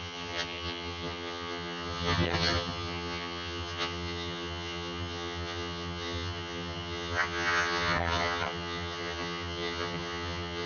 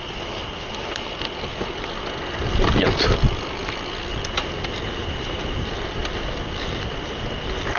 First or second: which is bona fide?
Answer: second